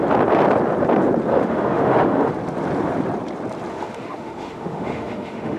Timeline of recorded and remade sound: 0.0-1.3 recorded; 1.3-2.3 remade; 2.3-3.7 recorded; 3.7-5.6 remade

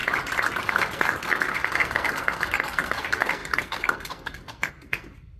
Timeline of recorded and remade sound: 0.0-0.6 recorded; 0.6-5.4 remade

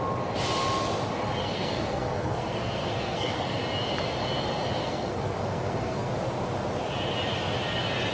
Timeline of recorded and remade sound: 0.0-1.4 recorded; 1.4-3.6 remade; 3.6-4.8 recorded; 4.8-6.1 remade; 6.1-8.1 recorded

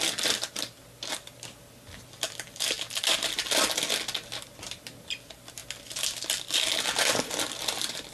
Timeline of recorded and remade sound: 0.0-8.1 recorded

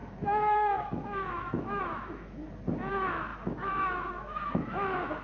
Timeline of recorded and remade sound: 0.0-2.4 remade; 2.4-2.9 recorded; 2.9-5.2 remade

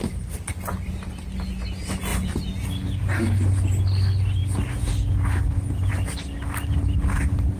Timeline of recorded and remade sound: 0.0-7.6 recorded

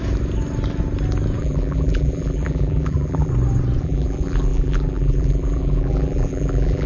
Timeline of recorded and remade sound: 0.0-1.4 recorded; 1.4-3.3 remade; 3.3-3.8 recorded; 3.8-6.9 remade